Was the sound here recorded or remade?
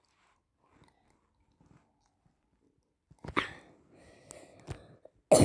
recorded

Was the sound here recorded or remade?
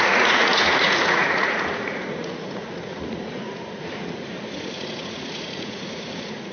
remade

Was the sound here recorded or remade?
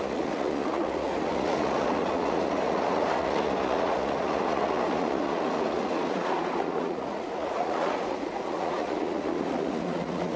remade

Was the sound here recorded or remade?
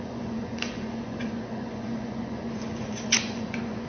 remade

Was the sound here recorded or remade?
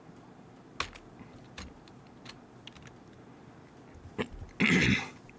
recorded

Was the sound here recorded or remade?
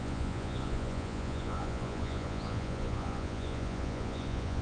remade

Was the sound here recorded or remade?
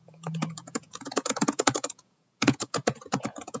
remade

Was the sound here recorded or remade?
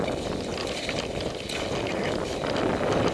recorded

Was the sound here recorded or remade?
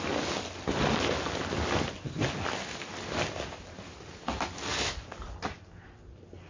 recorded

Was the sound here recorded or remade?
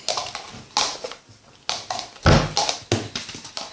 recorded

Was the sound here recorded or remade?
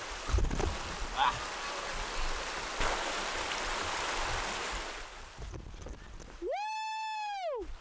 recorded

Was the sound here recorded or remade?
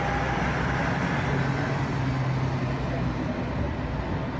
recorded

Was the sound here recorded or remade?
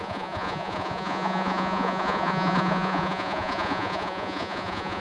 remade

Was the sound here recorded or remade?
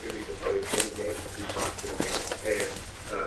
remade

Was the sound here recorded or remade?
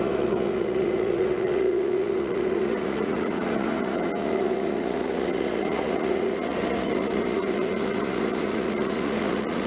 remade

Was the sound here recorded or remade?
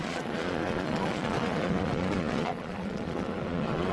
remade